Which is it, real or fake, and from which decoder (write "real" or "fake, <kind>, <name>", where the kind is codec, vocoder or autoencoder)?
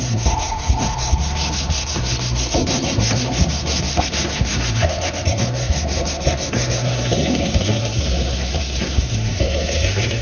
fake, codec, SNAC